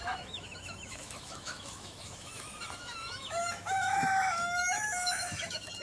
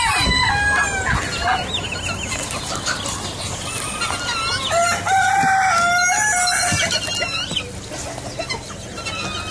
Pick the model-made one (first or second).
first